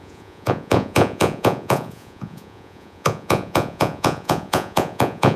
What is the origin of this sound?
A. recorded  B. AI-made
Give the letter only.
B